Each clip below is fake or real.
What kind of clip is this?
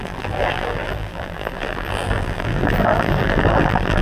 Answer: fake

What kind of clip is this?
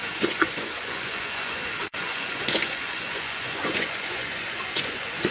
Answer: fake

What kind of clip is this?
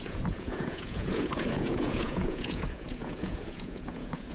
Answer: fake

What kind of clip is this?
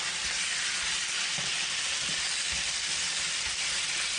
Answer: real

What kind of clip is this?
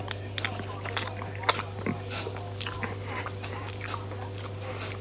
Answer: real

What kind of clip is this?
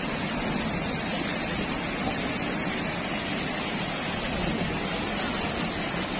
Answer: real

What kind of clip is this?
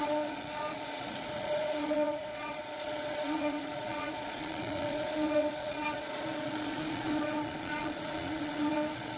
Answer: fake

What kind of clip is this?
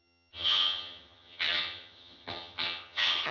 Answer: fake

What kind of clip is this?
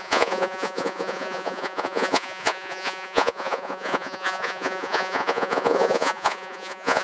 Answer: fake